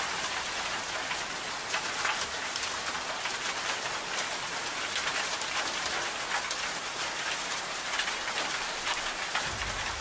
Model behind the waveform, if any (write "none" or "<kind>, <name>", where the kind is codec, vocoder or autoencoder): none